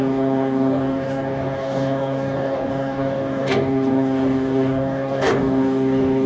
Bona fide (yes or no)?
no